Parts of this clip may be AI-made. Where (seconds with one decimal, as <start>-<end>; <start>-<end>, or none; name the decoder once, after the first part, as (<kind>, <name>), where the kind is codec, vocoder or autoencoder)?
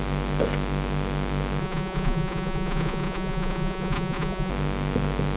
1.6-4.5 (vocoder, Vocos)